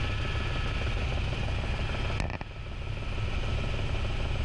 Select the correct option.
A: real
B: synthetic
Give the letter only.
A